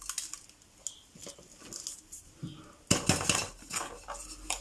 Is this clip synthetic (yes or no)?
no